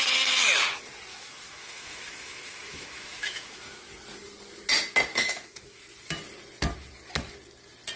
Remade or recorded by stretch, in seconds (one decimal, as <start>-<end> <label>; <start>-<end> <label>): 0.0-1.1 recorded; 1.1-3.9 remade; 3.9-5.1 recorded; 5.1-5.8 remade; 5.8-8.0 recorded